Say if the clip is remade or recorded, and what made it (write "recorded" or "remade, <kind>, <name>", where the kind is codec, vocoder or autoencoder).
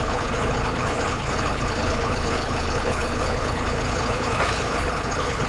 remade, codec, HILCodec